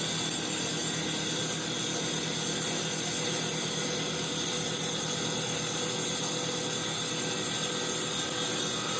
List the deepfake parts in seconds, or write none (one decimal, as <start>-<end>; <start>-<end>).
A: none